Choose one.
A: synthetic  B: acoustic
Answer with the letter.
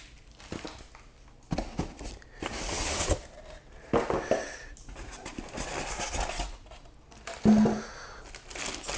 B